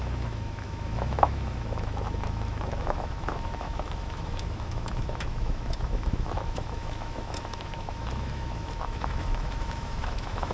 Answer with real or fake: fake